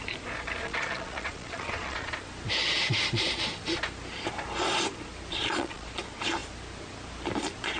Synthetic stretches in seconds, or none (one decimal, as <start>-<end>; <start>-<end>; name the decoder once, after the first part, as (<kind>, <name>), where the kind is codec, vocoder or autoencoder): 0.6-2.1 (vocoder, Vocos); 5.3-5.9